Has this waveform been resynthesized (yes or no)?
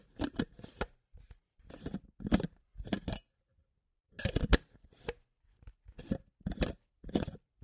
no